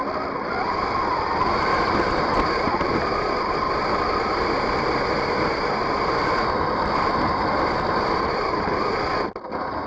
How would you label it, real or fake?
real